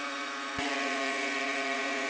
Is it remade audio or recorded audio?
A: remade